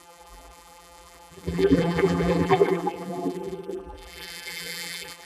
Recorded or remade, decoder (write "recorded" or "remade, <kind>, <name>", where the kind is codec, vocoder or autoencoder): remade, vocoder, BigVGAN v2